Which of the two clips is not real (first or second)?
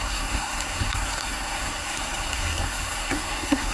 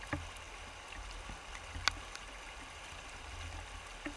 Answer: first